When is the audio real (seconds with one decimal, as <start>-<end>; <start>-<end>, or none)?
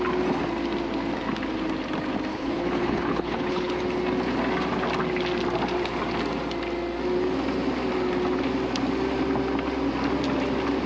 0.0-2.3; 3.8-10.9